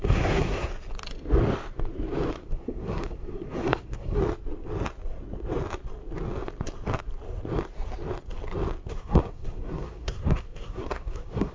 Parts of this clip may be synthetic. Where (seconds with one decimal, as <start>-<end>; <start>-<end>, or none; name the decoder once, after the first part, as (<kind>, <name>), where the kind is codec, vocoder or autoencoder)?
0.0-0.7 (codec, SNAC); 2.3-4.2; 8.9-11.5